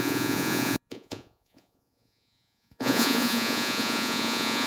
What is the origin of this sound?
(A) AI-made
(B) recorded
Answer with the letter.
A